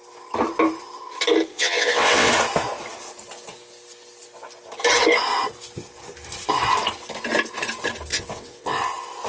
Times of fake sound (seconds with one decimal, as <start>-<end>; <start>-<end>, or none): 1.5-2.3; 8.1-8.8